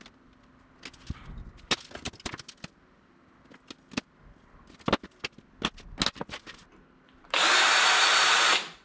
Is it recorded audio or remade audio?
recorded